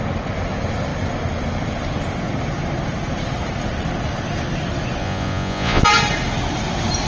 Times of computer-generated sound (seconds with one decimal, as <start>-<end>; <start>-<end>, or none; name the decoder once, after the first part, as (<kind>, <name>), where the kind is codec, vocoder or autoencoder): 5.0-5.8 (vocoder, Vocos)